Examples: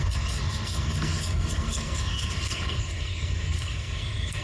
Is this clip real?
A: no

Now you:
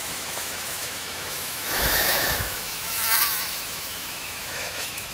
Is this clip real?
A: no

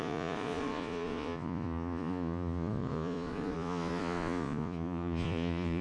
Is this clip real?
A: no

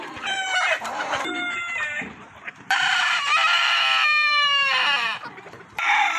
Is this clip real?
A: no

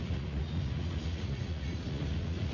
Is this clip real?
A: no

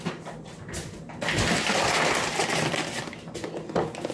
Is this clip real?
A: yes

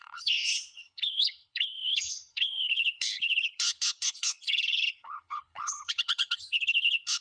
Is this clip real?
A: no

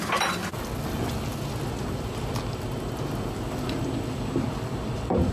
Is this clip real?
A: yes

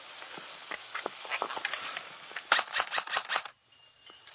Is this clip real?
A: yes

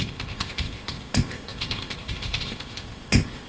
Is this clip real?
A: no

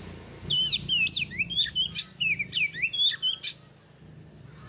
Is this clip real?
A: yes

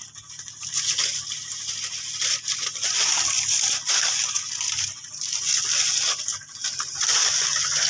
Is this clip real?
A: yes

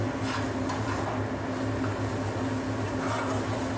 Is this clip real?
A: yes